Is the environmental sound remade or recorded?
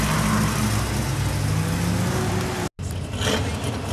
recorded